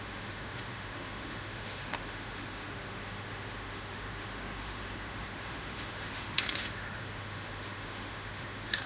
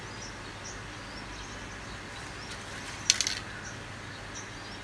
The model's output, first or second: first